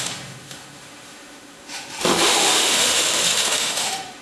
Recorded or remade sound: remade